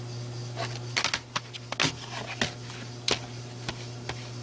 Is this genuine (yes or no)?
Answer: yes